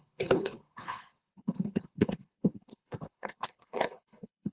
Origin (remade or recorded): remade